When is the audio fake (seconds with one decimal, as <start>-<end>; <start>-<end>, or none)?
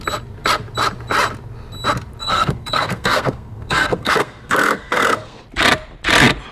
2.2-5.4